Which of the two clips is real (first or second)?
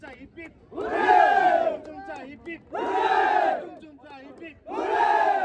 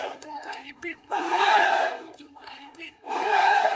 first